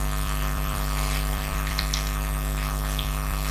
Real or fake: fake